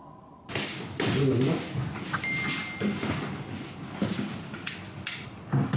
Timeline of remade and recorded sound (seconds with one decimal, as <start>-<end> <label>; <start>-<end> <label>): 0.0-5.8 recorded